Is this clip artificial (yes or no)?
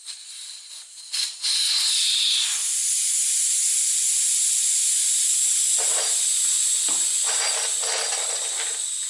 no